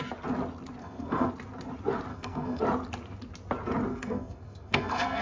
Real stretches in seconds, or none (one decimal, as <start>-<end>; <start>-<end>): 0.0-0.8; 1.3-2.1; 2.6-3.9